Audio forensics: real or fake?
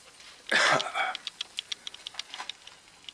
real